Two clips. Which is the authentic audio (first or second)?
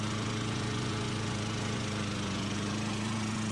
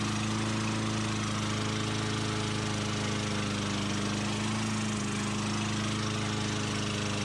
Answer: second